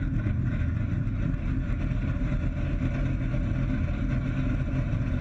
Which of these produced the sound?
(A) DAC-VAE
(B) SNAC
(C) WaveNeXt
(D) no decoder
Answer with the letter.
D